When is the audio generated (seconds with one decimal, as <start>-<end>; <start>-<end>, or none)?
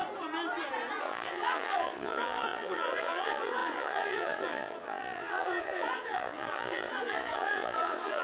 1.0-8.2